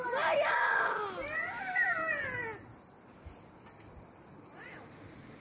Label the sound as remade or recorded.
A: recorded